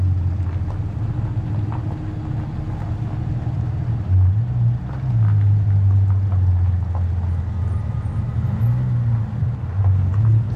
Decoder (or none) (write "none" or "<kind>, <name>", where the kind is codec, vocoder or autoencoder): none